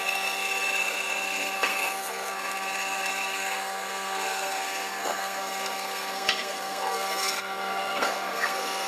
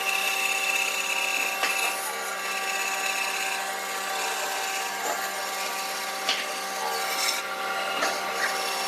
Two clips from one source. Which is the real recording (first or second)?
second